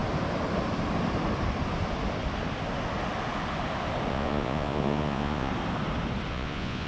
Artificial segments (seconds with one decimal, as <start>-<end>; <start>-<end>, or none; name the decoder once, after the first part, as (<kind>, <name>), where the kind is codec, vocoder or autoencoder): 4.1-5.5 (vocoder, Vocos); 6.3-6.9